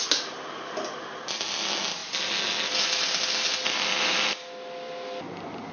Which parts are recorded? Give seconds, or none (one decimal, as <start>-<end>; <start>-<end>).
0.0-5.7